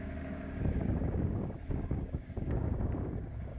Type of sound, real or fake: fake